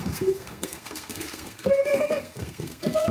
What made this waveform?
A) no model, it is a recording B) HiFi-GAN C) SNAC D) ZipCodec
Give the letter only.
C